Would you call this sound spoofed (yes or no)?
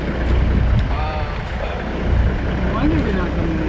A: no